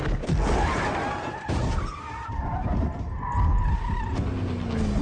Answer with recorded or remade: recorded